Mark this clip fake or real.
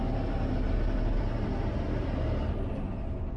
real